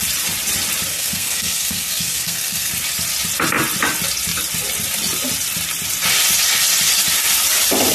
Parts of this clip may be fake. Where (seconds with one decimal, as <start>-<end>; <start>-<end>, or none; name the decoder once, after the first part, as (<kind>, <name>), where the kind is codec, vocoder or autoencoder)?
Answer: 0.9-2.7 (codec, SNAC)